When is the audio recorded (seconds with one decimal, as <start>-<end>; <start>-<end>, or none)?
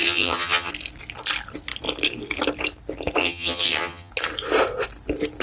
0.7-3.2; 4.1-5.4